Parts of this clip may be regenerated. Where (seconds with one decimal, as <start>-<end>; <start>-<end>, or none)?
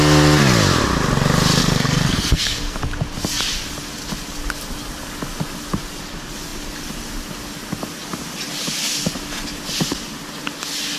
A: 1.6-2.8